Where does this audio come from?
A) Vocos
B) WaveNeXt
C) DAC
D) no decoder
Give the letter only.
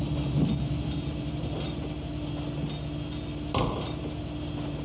D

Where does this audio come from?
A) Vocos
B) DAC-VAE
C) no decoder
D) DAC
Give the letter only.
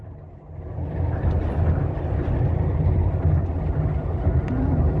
C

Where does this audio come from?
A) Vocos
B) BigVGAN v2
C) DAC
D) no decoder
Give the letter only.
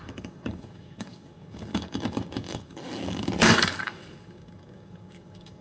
C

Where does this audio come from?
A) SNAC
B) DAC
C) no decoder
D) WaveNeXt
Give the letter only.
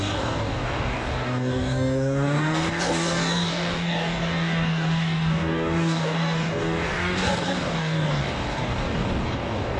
B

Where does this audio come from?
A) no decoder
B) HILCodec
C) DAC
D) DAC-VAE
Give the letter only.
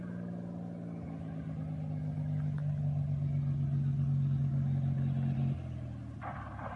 A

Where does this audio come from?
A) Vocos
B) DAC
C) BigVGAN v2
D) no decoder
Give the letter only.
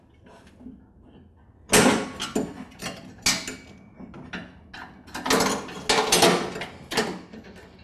D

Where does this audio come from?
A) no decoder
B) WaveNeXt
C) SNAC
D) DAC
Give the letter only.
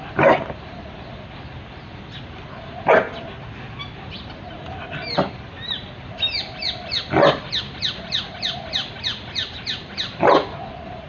A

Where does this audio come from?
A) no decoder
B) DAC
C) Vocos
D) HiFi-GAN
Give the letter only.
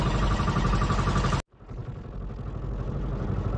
A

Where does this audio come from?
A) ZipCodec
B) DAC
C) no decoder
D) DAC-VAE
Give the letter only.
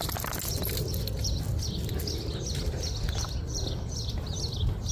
C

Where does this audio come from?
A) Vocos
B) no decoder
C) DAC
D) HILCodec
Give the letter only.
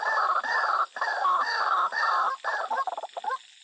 B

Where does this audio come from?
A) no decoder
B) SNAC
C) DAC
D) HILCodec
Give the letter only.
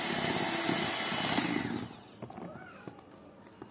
A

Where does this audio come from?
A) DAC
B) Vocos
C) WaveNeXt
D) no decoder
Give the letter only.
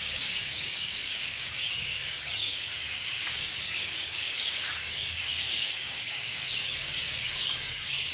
A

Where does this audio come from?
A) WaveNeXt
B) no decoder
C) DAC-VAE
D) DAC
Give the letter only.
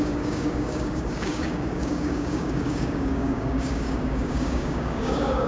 D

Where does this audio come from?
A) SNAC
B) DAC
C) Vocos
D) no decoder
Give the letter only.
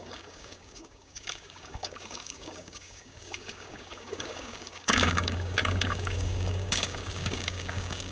B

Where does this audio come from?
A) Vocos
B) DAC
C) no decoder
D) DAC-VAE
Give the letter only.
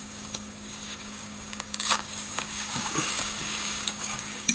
B